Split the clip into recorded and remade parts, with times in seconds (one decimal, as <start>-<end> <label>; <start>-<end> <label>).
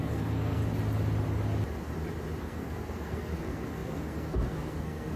0.0-0.6 remade; 0.6-2.4 recorded; 2.4-5.2 remade